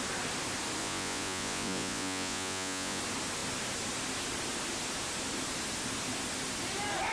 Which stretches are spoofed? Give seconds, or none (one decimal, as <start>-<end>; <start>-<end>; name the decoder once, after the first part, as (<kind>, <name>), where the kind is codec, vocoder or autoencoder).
0.8-3.0 (vocoder, Vocos)